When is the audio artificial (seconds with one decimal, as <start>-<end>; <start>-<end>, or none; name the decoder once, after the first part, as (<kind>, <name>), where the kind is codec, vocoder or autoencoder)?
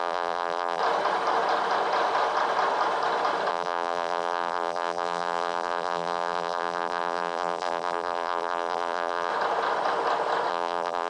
0.0-0.8 (vocoder, BigVGAN v2); 3.5-9.3; 10.5-11.1